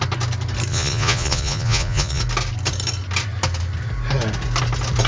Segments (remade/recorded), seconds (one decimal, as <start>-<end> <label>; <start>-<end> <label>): 0.0-0.7 recorded; 0.7-2.2 remade; 2.2-5.1 recorded